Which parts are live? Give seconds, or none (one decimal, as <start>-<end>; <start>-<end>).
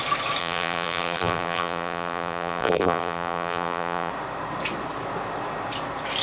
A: 0.0-0.4; 4.1-6.2